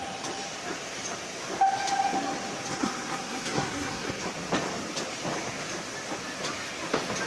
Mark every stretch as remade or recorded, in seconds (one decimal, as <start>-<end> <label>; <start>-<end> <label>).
0.0-2.7 recorded; 2.7-4.2 remade; 4.2-7.3 recorded